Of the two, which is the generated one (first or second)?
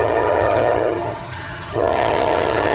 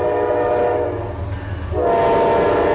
first